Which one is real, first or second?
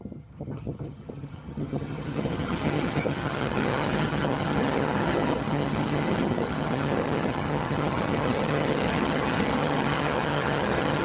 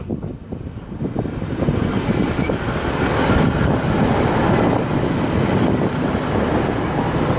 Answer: second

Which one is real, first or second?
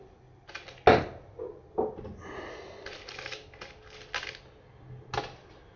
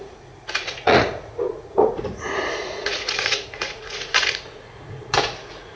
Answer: first